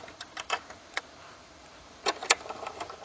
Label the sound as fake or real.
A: fake